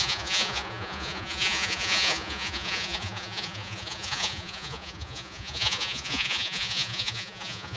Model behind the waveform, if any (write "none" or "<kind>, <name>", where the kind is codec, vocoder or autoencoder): vocoder, Vocos